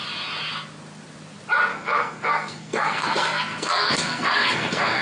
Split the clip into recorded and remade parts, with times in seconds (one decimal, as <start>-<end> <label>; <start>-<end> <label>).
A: 0.0-1.7 recorded; 1.7-5.0 remade